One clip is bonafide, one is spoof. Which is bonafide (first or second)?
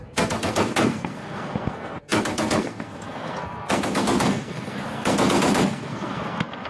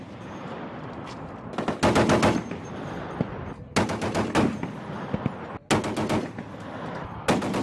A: second